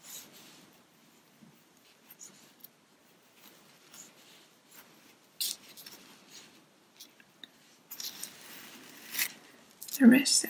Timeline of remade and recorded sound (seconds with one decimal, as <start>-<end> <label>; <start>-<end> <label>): 0.0-10.5 recorded